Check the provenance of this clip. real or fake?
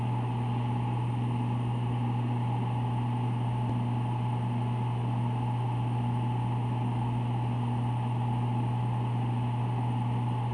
real